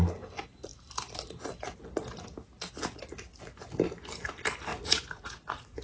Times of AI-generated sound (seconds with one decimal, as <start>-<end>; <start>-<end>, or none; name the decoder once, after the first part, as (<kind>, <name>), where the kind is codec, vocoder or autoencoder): 4.7-5.8 (vocoder, Vocos)